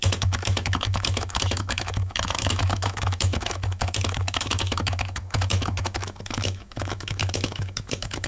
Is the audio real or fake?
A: fake